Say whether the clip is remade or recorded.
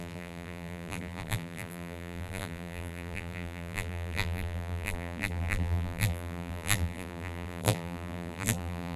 remade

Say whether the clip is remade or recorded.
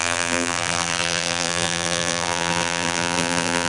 remade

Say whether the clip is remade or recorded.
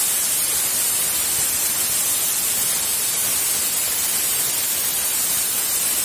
recorded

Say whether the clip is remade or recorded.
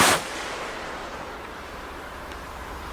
remade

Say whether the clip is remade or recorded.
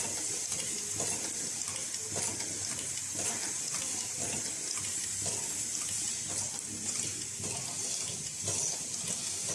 recorded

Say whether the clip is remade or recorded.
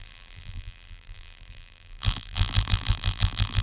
remade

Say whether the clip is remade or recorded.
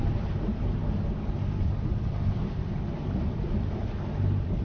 recorded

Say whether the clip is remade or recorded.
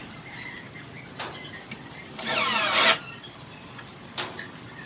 remade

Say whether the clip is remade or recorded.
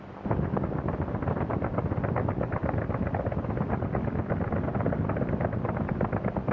recorded